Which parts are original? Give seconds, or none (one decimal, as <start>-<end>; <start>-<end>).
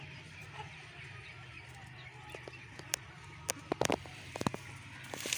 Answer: 0.0-5.4